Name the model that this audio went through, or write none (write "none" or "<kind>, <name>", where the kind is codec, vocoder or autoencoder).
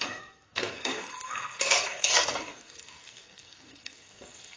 codec, SNAC